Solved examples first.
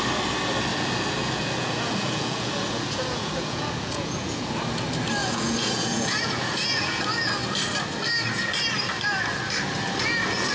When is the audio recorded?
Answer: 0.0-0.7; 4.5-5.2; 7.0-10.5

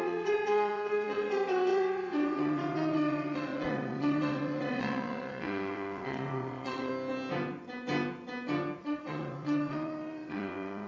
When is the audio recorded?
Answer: 6.9-8.8

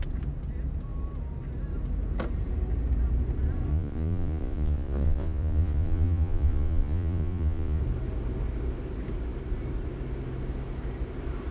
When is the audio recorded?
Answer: 0.0-3.7; 7.8-11.5

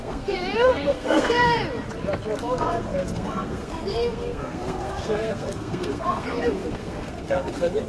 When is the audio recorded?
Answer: 1.6-2.4

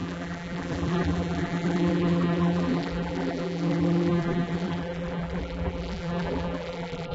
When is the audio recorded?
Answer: none

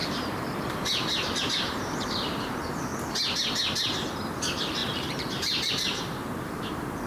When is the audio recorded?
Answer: 2.9-4.1

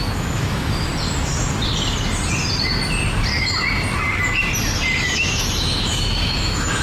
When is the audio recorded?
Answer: 0.9-5.0

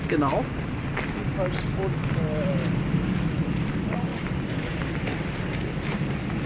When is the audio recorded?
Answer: 0.0-6.5